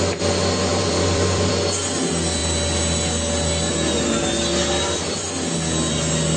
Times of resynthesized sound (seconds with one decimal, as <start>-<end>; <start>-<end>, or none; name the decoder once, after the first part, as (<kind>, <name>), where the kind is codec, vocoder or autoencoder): 0.7-1.5 (vocoder, BigVGAN v2)